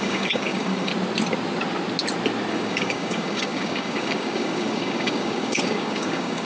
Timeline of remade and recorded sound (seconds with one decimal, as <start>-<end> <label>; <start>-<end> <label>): 0.0-0.9 remade; 0.9-2.5 recorded; 2.5-6.4 remade